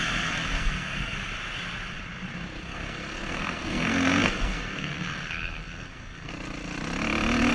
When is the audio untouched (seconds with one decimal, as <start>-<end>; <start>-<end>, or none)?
1.3-2.6; 6.3-7.5